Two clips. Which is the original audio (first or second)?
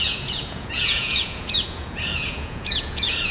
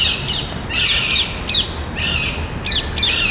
second